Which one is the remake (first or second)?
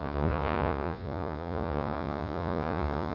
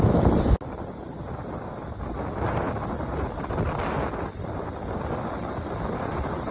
first